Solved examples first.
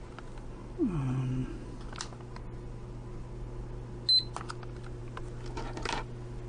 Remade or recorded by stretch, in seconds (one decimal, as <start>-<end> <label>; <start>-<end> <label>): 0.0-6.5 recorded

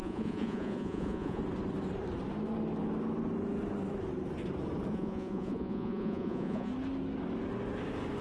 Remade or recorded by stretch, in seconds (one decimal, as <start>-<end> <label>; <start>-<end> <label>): 0.0-1.4 remade; 1.4-4.9 recorded; 4.9-6.7 remade; 6.7-8.2 recorded

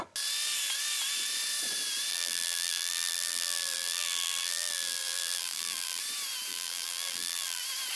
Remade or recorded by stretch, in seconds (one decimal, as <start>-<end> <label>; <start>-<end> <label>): 0.0-2.1 recorded; 2.1-6.0 remade; 6.0-6.5 recorded; 6.5-7.6 remade; 7.6-8.0 recorded

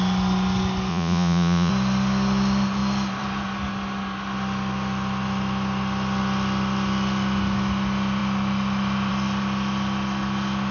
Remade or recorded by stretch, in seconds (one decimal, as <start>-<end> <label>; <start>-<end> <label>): 0.0-0.9 recorded; 0.9-1.7 remade; 1.7-10.7 recorded

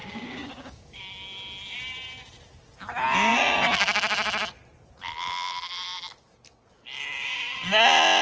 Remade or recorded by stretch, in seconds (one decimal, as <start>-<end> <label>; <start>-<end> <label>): 0.0-1.0 remade; 1.0-8.2 recorded